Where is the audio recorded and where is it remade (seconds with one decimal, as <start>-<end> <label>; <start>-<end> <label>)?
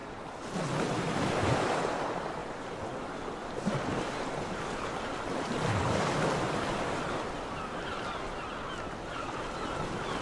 0.0-10.2 recorded